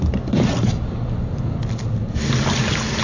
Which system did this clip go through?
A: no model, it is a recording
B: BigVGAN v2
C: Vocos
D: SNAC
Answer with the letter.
A